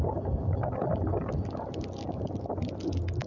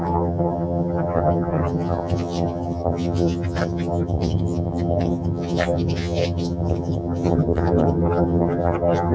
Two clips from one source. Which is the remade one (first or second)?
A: second